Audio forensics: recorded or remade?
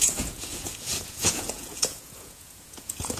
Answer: remade